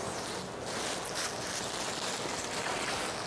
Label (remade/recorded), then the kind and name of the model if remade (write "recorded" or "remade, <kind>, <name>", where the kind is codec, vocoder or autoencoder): recorded